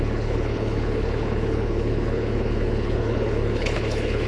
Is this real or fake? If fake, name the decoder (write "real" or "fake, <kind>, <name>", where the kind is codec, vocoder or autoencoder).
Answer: fake, codec, HILCodec